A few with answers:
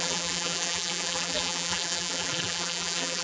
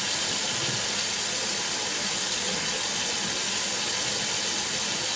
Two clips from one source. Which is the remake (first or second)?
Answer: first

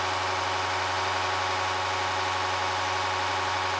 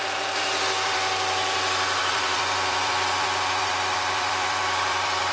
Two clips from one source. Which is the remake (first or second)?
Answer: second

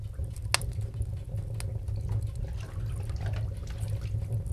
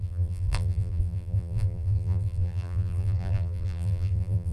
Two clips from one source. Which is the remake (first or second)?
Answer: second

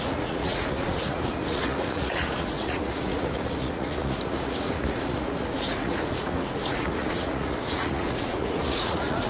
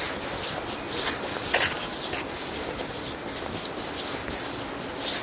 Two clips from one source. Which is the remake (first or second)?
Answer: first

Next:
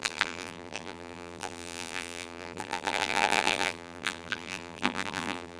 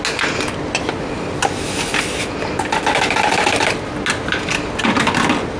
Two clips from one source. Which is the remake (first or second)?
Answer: first